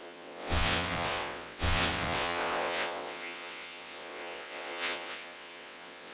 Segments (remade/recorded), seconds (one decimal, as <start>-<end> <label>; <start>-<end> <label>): 0.0-6.1 remade